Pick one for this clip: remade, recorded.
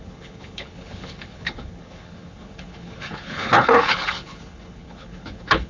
remade